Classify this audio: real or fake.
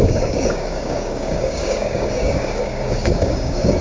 fake